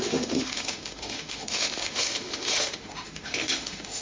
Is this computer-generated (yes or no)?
yes